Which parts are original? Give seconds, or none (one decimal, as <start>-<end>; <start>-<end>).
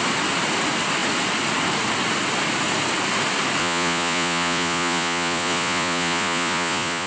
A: 0.0-3.6